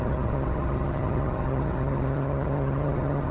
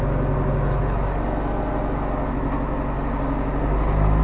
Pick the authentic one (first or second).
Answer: second